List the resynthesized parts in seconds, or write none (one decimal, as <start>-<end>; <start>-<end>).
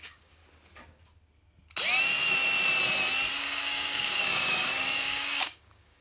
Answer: 0.0-0.4; 3.4-6.0